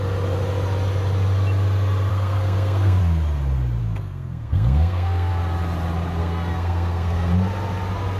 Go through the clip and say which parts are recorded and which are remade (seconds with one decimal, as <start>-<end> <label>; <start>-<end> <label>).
0.0-2.1 recorded; 2.1-3.0 remade; 3.0-3.8 recorded; 3.8-5.3 remade; 5.3-6.2 recorded; 6.2-7.3 remade; 7.3-8.2 recorded